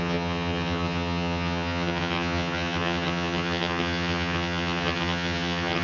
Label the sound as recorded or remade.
remade